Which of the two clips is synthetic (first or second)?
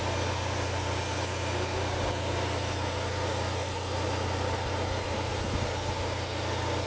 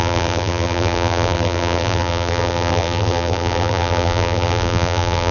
second